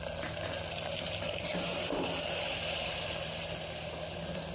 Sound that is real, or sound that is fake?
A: real